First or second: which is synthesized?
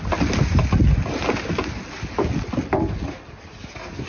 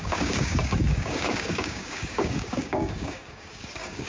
second